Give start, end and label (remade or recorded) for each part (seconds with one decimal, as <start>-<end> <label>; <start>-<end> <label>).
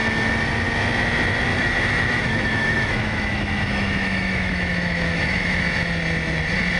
0.0-1.5 recorded; 1.5-5.6 remade; 5.6-6.8 recorded